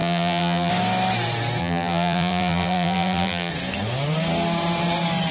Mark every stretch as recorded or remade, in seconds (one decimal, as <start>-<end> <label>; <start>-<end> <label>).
0.0-0.7 remade; 0.7-1.6 recorded; 1.6-3.5 remade; 3.5-5.3 recorded